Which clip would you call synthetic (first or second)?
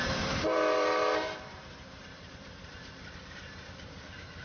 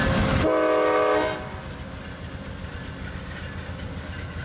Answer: first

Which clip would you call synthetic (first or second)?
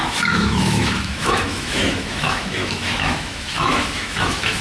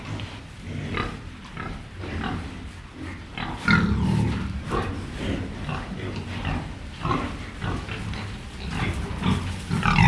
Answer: first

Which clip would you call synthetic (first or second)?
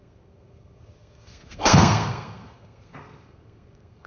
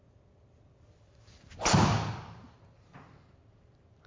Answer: first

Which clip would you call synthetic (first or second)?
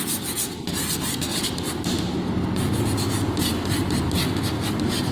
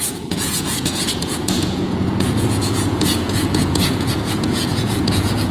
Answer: second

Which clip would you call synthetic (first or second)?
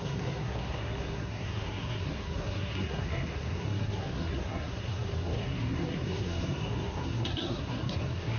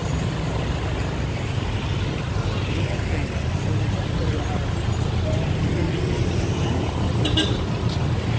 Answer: first